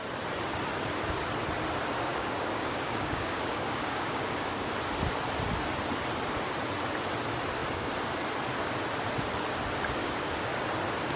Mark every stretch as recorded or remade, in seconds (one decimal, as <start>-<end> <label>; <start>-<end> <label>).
0.0-2.1 recorded; 2.1-4.7 remade; 4.7-10.0 recorded; 10.0-10.6 remade; 10.6-11.2 recorded